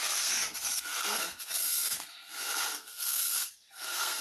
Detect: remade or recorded remade